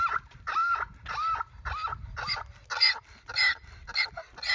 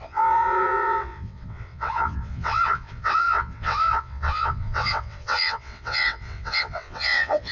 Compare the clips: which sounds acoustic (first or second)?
first